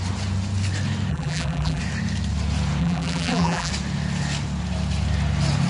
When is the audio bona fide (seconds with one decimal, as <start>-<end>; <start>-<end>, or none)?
0.0-1.1; 1.8-2.8; 3.7-5.7